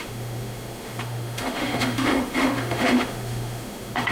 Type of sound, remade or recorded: remade